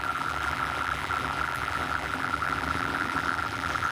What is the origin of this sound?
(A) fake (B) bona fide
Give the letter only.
A